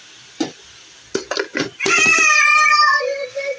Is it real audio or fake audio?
real